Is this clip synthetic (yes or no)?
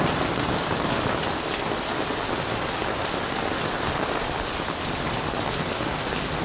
no